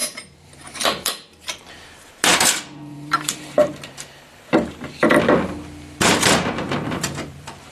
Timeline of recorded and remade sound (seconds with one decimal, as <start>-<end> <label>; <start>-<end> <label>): 0.0-1.7 remade; 1.7-2.3 recorded; 2.3-5.1 remade; 5.1-6.1 recorded; 6.1-7.7 remade